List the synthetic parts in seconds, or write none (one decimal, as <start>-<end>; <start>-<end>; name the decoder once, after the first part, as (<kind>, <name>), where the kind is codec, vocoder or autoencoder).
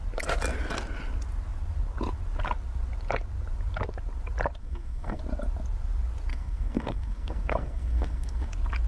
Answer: 4.6-5.2 (codec, SNAC); 6.3-8.5